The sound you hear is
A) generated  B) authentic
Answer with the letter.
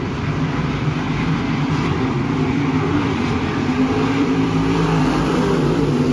A